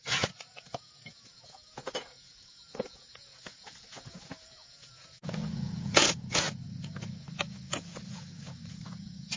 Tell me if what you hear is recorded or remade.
remade